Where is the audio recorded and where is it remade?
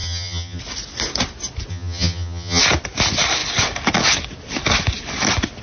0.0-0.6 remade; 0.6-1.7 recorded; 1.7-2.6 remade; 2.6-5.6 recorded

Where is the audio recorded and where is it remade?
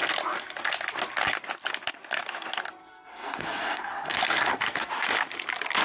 0.0-2.8 recorded; 2.8-4.9 remade; 4.9-5.8 recorded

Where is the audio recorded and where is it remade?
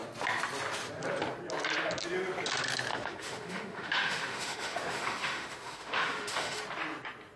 0.0-2.9 recorded; 2.9-6.6 remade; 6.6-7.4 recorded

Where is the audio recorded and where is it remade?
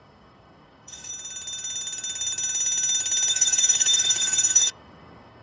0.0-1.1 remade; 1.1-3.3 recorded; 3.3-5.4 remade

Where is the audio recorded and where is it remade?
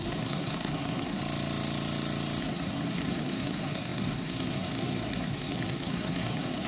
0.0-1.2 remade; 1.2-2.4 recorded; 2.4-6.7 remade